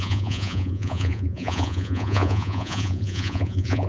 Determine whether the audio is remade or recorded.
remade